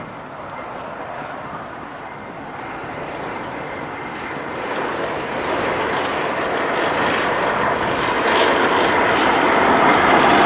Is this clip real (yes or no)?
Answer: yes